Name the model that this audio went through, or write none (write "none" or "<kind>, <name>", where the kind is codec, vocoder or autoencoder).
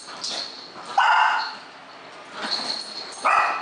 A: none